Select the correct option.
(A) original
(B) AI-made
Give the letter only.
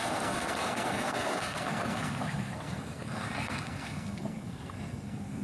B